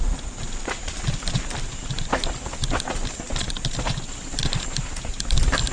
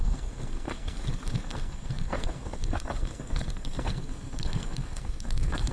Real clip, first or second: first